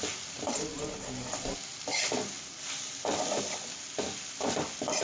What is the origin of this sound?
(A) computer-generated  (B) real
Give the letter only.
B